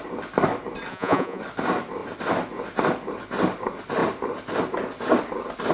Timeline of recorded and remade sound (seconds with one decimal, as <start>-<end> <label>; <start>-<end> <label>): 0.0-0.9 recorded; 0.9-1.4 remade; 1.4-5.7 recorded